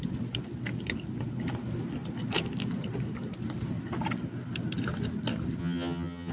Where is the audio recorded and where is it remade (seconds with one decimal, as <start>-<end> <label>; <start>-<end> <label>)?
0.0-5.6 recorded; 5.6-6.3 remade